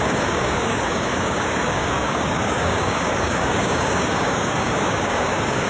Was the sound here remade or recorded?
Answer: remade